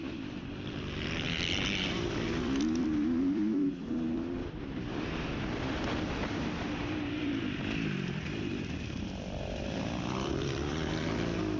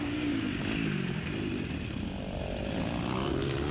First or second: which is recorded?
second